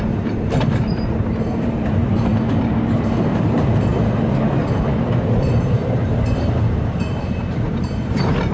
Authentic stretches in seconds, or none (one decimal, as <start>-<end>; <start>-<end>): 2.3-2.9; 3.9-4.7